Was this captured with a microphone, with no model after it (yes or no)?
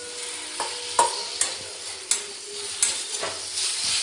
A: yes